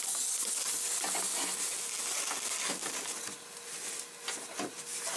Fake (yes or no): no